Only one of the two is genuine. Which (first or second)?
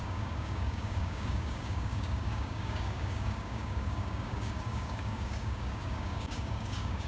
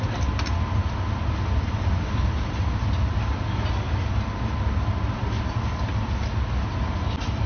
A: second